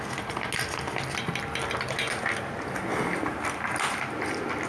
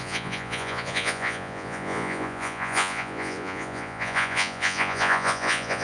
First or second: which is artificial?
second